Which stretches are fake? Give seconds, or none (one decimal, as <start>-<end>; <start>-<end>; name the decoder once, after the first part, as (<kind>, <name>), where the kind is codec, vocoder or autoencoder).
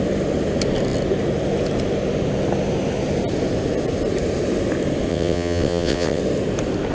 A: 5.1-6.2 (vocoder, WaveNeXt)